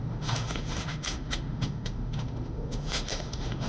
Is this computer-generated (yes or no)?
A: yes